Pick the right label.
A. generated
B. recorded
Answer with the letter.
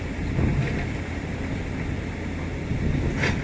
B